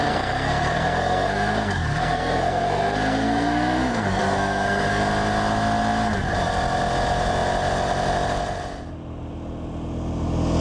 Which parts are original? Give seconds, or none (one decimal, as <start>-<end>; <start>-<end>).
5.0-10.6